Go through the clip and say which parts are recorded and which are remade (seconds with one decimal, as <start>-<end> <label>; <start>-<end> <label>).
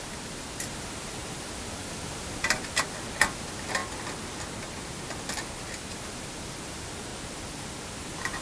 0.0-3.8 remade; 3.8-5.9 recorded; 5.9-7.1 remade; 7.1-8.0 recorded; 8.0-8.4 remade